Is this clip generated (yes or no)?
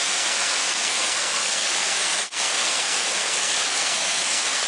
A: yes